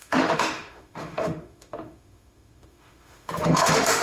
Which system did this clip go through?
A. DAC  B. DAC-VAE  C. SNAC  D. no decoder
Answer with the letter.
B